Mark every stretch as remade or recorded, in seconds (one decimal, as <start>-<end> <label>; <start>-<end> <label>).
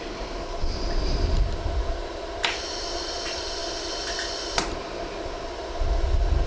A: 0.0-6.5 recorded